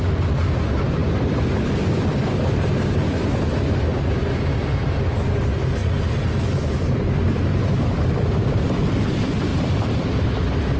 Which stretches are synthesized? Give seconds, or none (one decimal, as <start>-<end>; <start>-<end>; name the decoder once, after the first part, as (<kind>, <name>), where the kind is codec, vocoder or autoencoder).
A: none